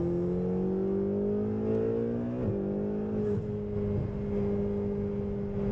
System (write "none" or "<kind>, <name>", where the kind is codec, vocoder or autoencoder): none